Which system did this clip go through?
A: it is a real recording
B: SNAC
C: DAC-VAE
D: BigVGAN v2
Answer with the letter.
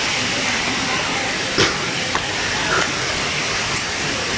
A